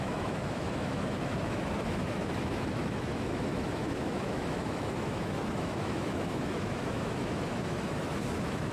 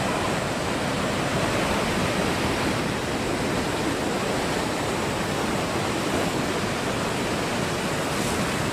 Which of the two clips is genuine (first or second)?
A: second